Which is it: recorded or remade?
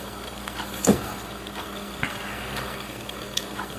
remade